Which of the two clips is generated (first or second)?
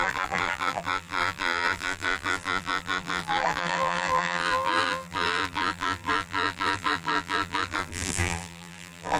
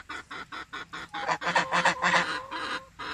first